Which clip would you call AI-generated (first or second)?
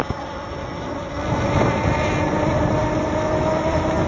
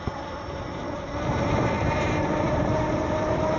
second